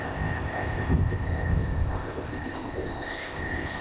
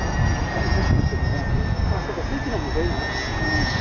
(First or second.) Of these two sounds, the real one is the second